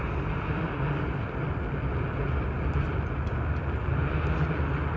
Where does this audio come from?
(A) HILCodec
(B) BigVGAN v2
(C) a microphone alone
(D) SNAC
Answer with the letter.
C